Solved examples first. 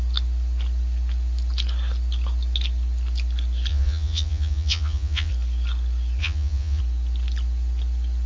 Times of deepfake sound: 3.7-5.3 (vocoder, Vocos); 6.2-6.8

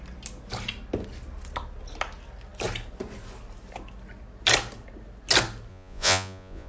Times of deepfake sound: 5.7-6.7 (vocoder, Vocos)

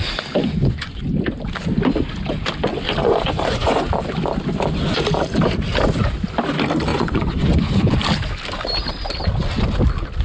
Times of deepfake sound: 0.4-1.0 (vocoder, Vocos); 3.0-3.9; 6.9-7.9